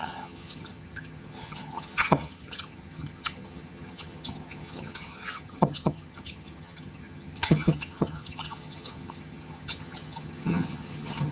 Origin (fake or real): fake